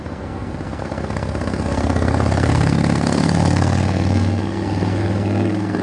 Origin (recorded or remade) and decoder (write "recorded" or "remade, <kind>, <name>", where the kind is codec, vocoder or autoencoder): remade, codec, SNAC